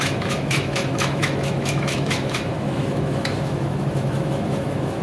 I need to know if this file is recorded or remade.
remade